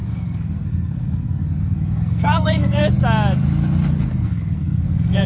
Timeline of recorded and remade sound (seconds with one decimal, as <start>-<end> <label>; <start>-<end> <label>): 0.0-2.8 remade; 2.8-3.9 recorded; 3.9-5.3 remade